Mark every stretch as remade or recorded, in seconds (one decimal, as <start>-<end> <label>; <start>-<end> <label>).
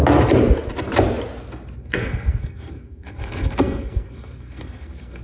0.0-1.8 recorded; 1.8-5.2 remade